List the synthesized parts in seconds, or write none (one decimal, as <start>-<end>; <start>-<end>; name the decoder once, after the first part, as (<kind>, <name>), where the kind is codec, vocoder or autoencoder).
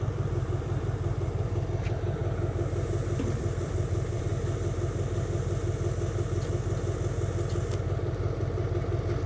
0.0-2.2 (vocoder, BigVGAN v2); 3.4-4.3; 8.0-9.3